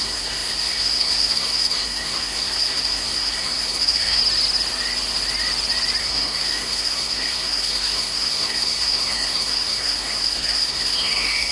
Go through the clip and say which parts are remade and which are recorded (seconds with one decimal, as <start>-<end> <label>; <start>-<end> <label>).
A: 0.0-4.2 remade; 4.2-6.0 recorded; 6.0-11.5 remade